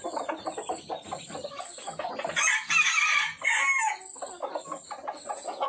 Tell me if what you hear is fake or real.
real